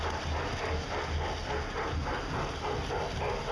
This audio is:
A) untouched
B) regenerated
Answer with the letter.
A